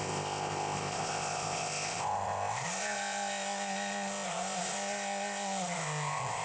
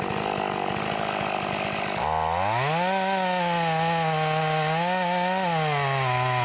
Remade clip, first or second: first